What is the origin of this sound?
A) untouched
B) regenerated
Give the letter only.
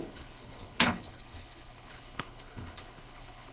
B